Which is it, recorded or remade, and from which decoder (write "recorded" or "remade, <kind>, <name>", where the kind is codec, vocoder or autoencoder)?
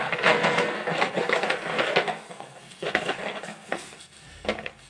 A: remade, codec, SNAC